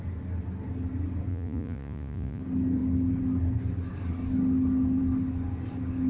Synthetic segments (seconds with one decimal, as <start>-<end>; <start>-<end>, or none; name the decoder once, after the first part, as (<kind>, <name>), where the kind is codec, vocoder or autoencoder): 1.3-2.4 (vocoder, Vocos)